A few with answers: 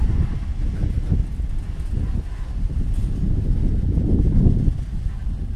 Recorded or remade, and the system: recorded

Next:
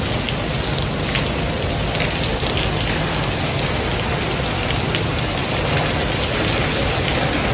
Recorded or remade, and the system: recorded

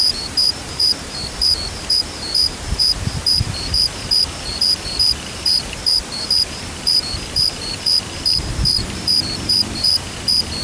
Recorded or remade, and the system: remade, vocoder, BigVGAN v2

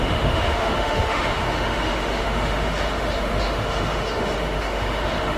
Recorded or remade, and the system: remade, autoencoder, DAC-VAE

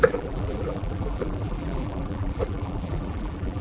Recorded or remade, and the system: remade, vocoder, BigVGAN v2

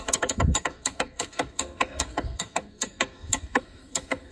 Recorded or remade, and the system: remade, codec, SNAC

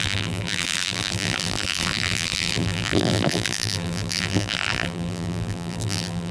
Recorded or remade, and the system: remade, vocoder, BigVGAN v2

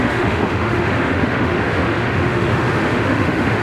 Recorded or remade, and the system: remade, autoencoder, DAC-VAE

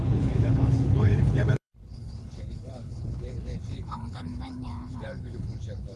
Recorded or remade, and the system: remade, codec, HILCodec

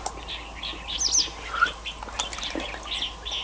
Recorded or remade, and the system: recorded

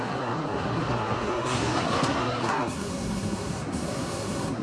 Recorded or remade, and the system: remade, codec, SNAC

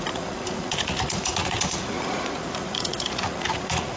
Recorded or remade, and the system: remade, vocoder, Vocos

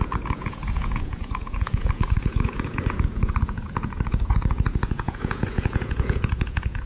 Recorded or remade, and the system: remade, vocoder, Vocos